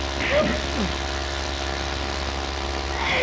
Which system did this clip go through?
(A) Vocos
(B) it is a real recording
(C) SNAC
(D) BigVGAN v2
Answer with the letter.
B